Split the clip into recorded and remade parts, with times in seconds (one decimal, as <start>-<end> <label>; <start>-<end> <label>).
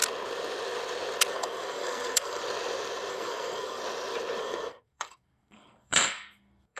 0.0-1.3 recorded; 1.3-2.4 remade; 2.4-3.1 recorded; 3.1-3.8 remade; 3.8-4.4 recorded; 4.4-6.8 remade